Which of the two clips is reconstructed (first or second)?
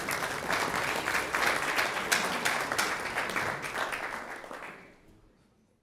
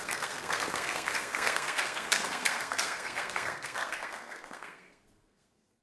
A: second